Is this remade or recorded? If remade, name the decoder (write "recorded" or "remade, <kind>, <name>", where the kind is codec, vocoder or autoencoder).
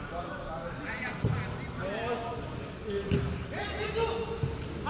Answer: recorded